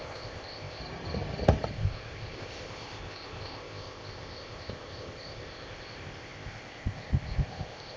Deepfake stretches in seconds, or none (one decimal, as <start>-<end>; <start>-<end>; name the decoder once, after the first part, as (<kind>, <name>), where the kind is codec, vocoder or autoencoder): 0.0-0.8 (codec, ZipCodec); 1.7-8.0